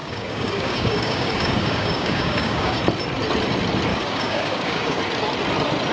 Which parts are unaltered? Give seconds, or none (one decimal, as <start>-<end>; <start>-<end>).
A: 2.8-3.9; 5.0-5.9